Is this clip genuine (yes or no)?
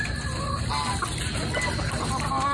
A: yes